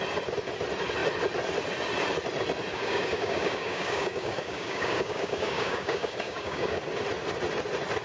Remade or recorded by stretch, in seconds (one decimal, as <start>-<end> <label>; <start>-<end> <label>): 0.0-2.7 recorded; 2.7-6.8 remade; 6.8-8.0 recorded